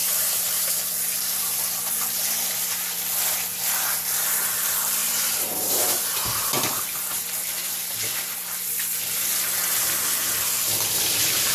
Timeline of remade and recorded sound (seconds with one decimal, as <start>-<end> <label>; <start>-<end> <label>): 0.0-0.8 remade; 0.8-5.0 recorded; 5.0-6.8 remade; 6.8-11.5 recorded